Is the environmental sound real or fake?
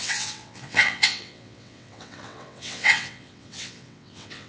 fake